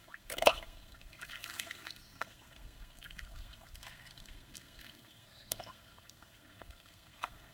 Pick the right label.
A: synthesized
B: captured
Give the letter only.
A